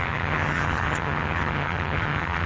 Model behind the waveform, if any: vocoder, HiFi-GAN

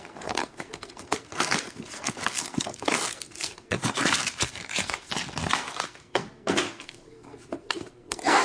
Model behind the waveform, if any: codec, SNAC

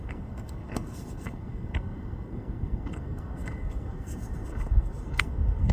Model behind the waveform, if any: codec, SNAC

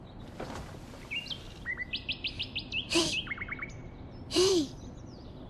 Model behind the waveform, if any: vocoder, BigVGAN v2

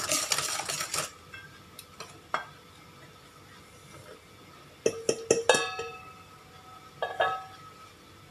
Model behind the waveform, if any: none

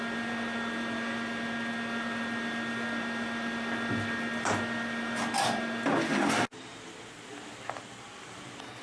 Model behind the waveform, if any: none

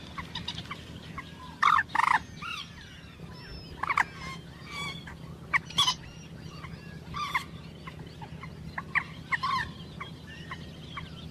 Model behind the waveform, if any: none